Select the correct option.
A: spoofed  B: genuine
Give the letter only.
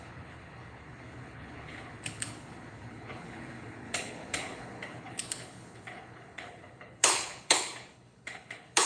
A